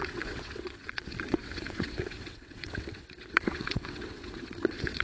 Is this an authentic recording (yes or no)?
no